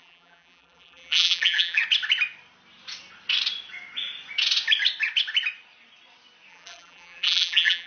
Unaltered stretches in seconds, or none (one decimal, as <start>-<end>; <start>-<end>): 1.8-6.5